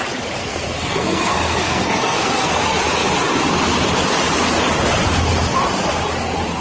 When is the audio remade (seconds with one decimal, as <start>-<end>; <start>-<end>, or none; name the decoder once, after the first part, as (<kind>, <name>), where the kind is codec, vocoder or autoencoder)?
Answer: 0.4-2.6 (codec, SNAC)